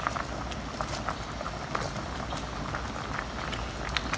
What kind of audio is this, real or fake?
real